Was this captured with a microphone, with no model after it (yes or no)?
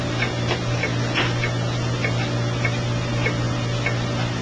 yes